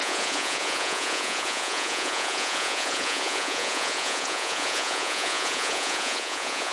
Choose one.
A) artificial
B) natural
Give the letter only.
A